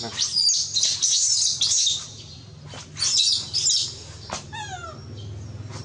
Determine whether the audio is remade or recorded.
recorded